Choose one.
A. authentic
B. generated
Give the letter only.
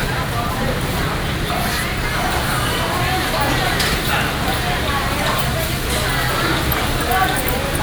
A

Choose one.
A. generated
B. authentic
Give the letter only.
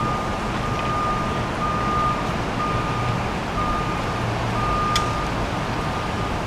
B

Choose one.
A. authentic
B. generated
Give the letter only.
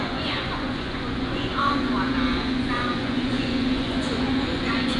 B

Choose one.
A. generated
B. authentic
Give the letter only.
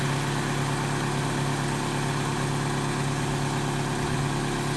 B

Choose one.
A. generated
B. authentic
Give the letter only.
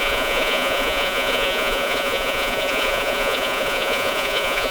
A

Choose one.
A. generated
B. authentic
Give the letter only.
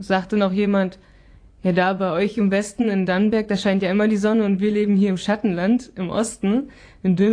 A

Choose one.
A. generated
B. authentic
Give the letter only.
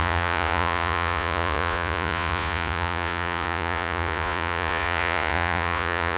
A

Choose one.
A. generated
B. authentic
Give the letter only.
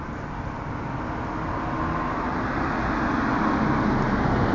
B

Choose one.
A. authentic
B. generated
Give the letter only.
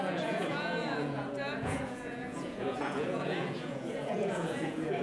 B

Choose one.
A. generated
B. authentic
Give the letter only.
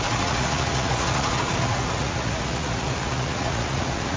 A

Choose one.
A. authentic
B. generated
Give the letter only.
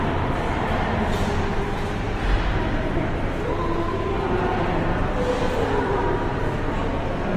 A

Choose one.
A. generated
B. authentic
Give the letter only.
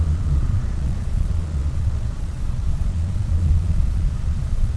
A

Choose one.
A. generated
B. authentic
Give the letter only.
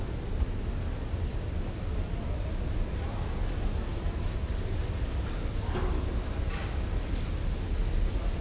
B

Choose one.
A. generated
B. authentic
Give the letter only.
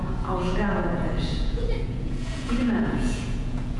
A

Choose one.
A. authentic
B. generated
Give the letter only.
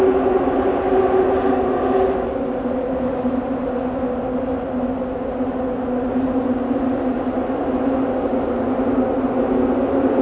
A